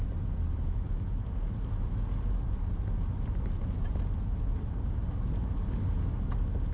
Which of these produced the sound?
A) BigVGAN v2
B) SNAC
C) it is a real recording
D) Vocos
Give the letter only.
C